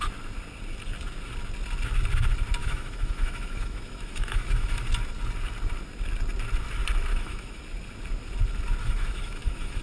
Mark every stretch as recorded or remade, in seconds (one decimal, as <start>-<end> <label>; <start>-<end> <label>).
0.0-2.6 recorded; 2.6-4.8 remade; 4.8-7.1 recorded; 7.1-7.6 remade; 7.6-8.8 recorded; 8.8-9.8 remade